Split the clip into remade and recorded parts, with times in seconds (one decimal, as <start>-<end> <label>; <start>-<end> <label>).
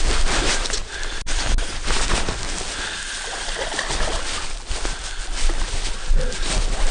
0.0-6.9 recorded